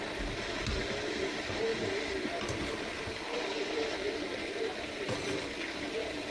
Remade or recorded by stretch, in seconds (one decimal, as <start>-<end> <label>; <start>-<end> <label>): 0.0-6.3 recorded